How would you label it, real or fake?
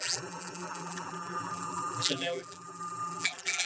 fake